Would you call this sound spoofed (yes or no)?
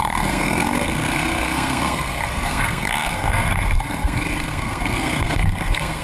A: yes